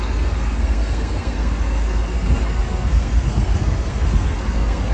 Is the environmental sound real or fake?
fake